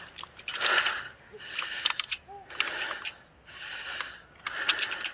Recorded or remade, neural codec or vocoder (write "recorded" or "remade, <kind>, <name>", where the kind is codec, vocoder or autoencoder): recorded